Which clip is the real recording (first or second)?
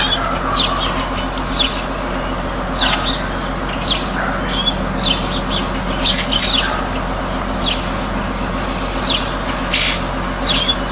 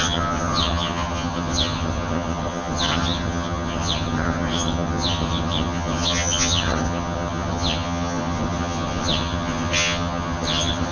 first